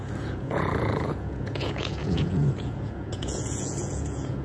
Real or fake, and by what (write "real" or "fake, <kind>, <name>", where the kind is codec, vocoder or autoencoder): fake, vocoder, Vocos